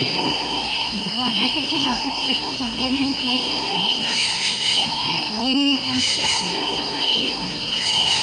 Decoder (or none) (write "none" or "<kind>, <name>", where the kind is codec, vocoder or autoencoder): codec, SNAC